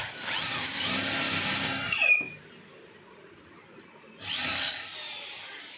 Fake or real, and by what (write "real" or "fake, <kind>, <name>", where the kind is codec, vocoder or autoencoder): real